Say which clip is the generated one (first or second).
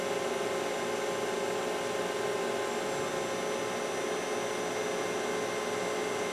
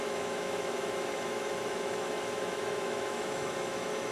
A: second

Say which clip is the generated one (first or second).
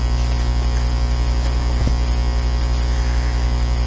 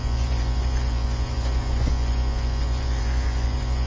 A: second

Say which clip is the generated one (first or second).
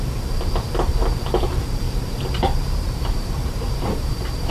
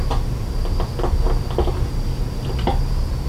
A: first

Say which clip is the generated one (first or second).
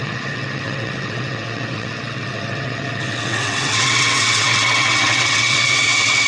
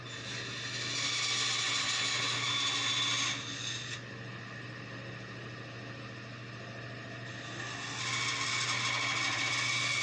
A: first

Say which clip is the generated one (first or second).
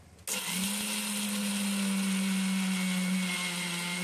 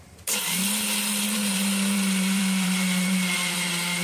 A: second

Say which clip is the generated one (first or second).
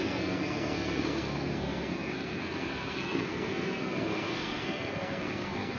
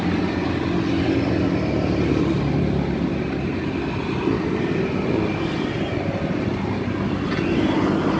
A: first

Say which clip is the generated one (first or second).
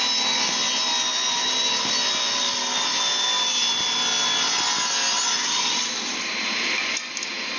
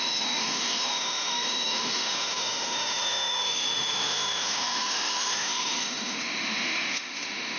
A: second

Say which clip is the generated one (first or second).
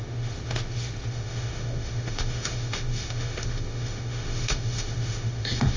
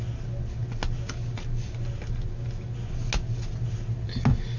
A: first